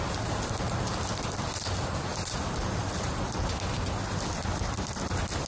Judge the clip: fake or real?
real